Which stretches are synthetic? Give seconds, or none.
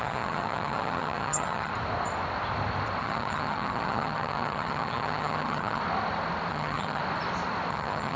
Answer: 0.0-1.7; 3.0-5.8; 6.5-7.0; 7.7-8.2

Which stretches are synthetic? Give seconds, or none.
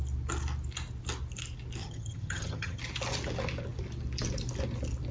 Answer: 1.8-2.8